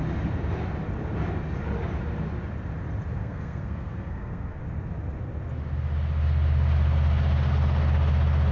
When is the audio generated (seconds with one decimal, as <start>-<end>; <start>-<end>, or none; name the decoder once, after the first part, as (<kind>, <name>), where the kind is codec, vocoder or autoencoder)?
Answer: 3.2-4.6 (codec, SNAC)